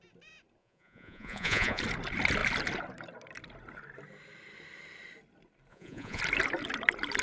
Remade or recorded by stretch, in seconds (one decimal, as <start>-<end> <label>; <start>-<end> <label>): 0.0-0.6 recorded; 0.6-1.8 remade; 1.8-5.7 recorded; 5.7-6.2 remade; 6.2-7.2 recorded